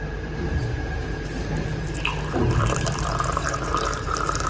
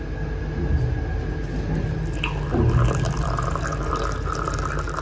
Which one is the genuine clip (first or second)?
second